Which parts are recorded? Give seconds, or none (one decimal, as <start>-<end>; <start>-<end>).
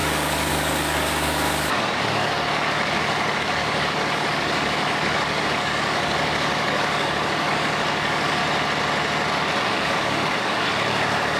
8.4-9.6